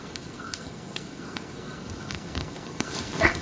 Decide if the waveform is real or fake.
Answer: fake